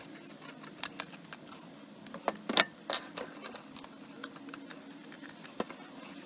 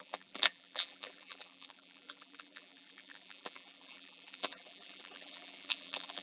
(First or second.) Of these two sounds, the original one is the first